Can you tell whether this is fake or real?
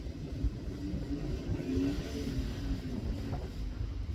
real